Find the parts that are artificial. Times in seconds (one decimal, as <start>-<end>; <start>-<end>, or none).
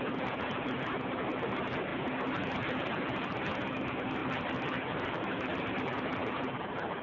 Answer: 4.2-5.8